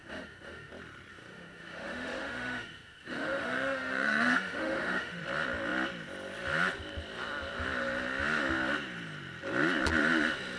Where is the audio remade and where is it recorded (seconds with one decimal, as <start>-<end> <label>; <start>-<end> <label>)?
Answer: 0.0-0.7 remade; 0.7-1.1 recorded; 1.1-5.2 remade; 5.2-10.6 recorded